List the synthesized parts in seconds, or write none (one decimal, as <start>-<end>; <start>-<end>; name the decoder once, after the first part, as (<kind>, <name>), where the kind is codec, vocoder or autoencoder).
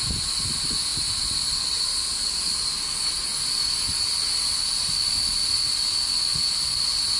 none